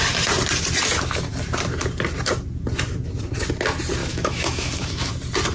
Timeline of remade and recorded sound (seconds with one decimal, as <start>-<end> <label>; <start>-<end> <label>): 0.0-4.0 recorded; 4.0-5.1 remade; 5.1-5.5 recorded